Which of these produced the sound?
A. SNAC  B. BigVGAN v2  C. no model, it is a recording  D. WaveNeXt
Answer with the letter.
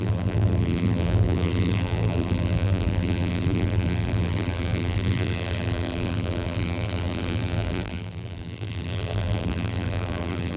B